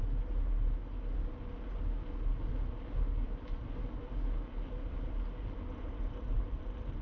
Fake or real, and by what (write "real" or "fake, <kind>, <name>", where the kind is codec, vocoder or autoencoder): real